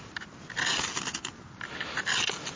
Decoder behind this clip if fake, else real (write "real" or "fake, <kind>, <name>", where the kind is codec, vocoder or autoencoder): real